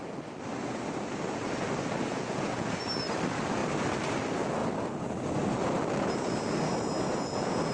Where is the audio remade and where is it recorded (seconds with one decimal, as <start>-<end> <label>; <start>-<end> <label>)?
0.0-2.1 recorded; 2.1-2.8 remade; 2.8-7.1 recorded; 7.1-7.7 remade